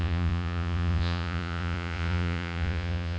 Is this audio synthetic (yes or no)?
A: yes